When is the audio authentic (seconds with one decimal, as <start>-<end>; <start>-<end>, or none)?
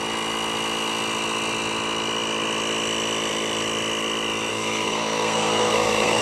0.0-4.5